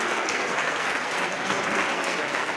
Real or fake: fake